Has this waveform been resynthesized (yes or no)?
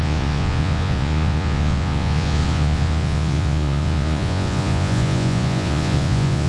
yes